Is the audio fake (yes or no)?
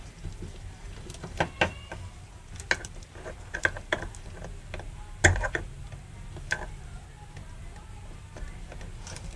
no